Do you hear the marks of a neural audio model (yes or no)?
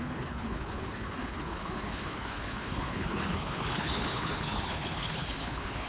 yes